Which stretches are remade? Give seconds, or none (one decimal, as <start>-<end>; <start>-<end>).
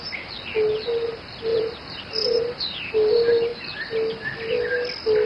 1.5-2.9